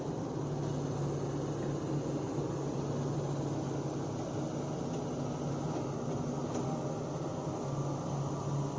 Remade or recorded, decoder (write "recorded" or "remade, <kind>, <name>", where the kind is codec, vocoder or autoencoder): recorded